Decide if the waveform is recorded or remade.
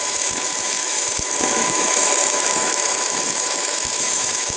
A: remade